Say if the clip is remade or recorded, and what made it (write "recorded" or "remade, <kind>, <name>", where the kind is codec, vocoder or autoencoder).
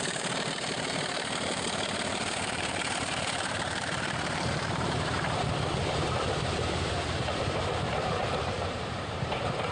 remade, vocoder, BigVGAN v2